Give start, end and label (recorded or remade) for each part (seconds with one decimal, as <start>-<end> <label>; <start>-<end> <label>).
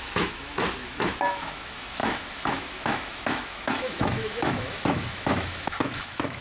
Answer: 0.0-6.4 remade